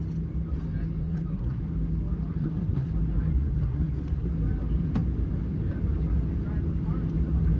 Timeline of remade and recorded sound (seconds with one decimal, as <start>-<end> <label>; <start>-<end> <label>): 0.0-1.0 recorded; 1.0-1.6 remade; 1.6-2.3 recorded; 2.3-2.9 remade; 2.9-3.3 recorded; 3.3-4.3 remade; 4.3-7.6 recorded